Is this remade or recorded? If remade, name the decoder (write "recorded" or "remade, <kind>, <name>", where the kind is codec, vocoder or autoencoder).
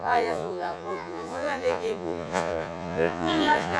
remade, vocoder, Vocos